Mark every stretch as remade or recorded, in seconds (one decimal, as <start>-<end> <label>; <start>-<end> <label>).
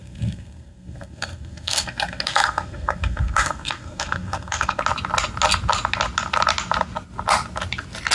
0.0-4.8 remade; 4.8-8.1 recorded